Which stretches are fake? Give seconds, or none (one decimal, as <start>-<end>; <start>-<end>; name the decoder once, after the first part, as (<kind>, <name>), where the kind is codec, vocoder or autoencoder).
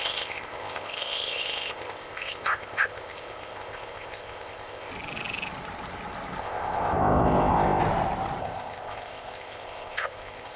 0.0-4.9 (codec, ZipCodec); 6.4-7.8; 8.4-10.6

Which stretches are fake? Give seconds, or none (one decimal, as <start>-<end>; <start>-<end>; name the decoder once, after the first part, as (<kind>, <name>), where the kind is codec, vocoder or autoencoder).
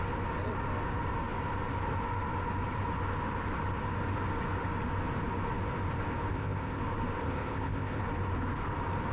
6.3-6.8 (codec, ZipCodec); 7.2-8.0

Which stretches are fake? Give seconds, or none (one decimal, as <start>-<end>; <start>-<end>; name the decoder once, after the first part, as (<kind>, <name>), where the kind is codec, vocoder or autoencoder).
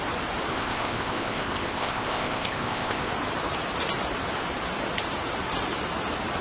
0.5-3.1 (codec, ZipCodec)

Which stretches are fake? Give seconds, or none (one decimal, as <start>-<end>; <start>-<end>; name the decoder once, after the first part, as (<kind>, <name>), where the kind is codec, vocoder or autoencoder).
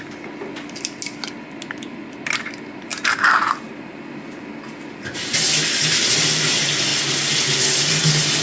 none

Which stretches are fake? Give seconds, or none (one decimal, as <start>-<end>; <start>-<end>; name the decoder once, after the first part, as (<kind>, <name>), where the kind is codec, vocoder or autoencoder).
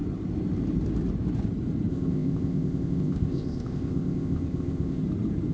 1.9-5.0 (codec, ZipCodec)